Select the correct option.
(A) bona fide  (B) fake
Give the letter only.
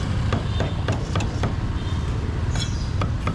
A